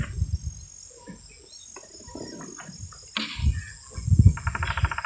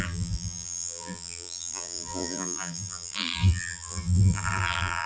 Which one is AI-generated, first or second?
second